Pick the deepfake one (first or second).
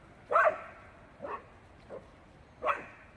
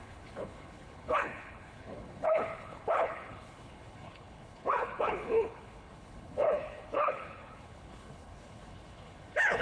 second